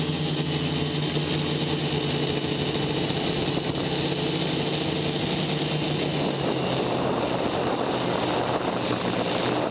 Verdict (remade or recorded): recorded